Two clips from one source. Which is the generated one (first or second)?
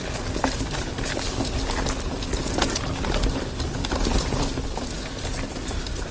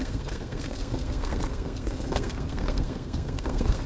second